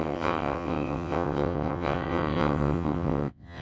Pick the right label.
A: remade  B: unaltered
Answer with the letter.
A